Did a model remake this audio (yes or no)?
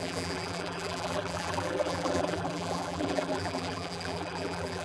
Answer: yes